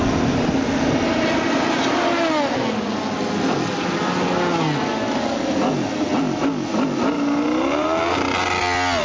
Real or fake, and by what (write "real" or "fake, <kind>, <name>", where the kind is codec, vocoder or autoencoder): real